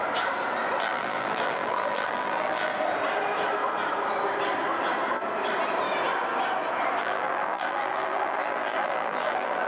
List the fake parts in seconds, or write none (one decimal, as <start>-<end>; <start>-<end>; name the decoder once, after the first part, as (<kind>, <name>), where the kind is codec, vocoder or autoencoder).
0.8-2.7 (vocoder, BigVGAN v2); 7.0-9.7